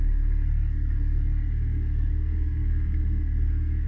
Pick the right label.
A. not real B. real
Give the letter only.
A